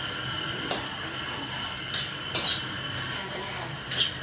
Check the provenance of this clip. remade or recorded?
recorded